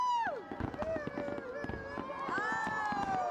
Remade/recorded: recorded